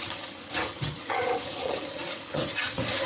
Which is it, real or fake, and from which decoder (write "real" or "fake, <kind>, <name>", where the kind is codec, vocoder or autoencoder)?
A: fake, vocoder, HiFi-GAN